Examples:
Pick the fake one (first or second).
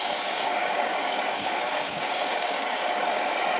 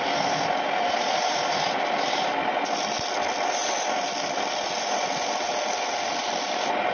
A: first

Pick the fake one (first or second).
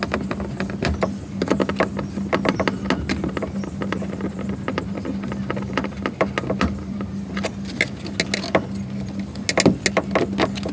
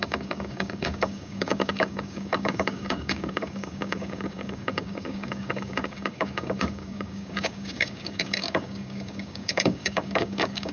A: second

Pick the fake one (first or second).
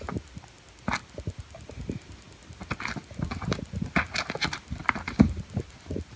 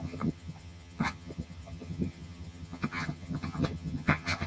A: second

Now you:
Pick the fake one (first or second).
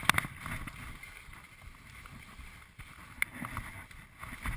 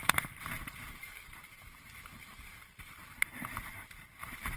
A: second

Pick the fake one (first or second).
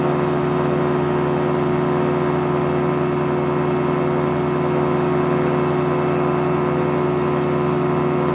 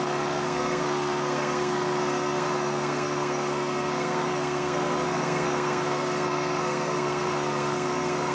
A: second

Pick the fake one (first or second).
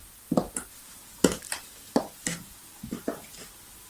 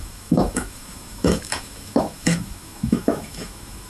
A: second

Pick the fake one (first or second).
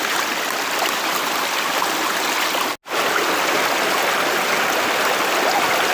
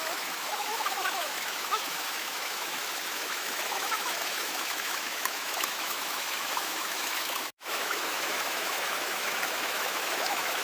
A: second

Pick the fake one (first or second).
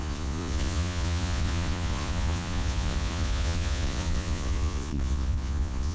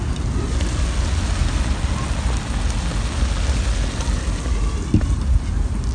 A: first